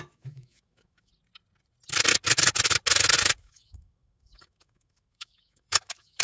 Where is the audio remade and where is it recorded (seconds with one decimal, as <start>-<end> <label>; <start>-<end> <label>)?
0.0-1.1 remade; 1.1-3.4 recorded; 3.4-6.2 remade